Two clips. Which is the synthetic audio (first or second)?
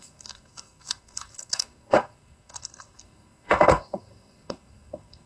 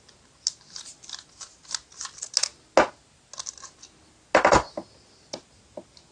first